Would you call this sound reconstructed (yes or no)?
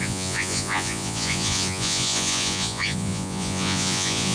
yes